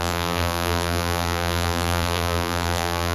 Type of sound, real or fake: fake